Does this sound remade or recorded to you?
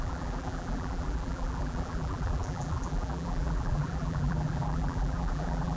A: remade